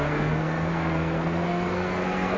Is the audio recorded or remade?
remade